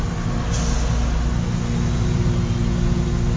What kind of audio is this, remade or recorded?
recorded